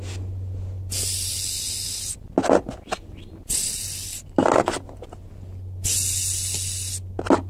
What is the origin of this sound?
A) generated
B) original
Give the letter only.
B